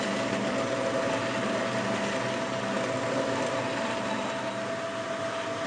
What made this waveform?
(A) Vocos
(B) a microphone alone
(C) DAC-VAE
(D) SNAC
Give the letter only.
B